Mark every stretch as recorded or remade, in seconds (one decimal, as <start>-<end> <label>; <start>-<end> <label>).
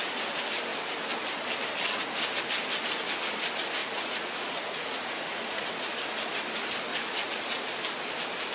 0.0-3.8 recorded; 3.8-5.6 remade; 5.6-6.9 recorded; 6.9-7.6 remade; 7.6-8.5 recorded